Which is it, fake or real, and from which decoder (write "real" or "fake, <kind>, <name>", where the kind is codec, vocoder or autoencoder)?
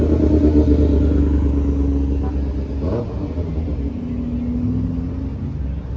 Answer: real